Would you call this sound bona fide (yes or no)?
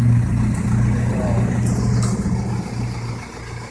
yes